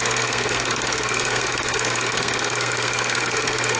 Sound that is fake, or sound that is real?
fake